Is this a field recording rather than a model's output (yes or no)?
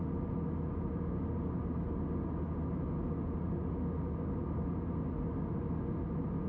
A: yes